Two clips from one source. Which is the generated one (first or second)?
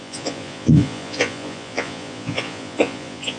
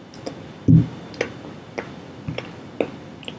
first